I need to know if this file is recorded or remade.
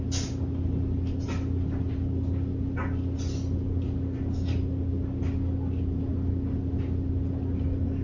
recorded